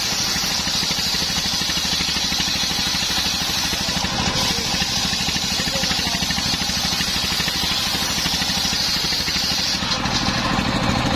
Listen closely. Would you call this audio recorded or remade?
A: recorded